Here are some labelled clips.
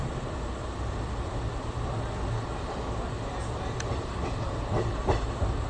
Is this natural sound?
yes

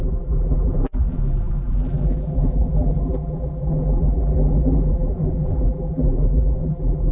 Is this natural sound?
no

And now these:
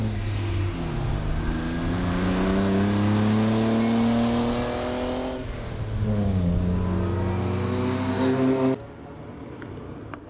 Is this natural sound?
yes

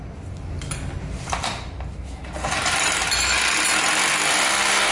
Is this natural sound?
yes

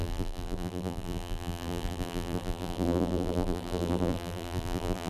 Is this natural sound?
no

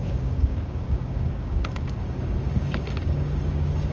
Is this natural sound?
no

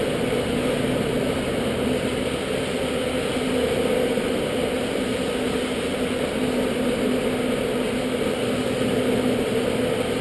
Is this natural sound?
yes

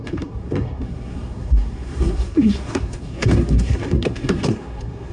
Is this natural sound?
no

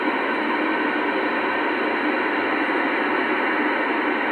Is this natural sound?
yes